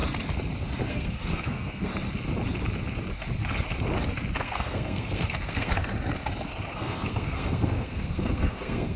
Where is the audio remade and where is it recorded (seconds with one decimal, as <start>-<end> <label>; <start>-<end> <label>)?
0.0-0.9 recorded; 0.9-1.9 remade; 1.9-4.4 recorded; 4.4-5.8 remade; 5.8-6.7 recorded; 6.7-9.0 remade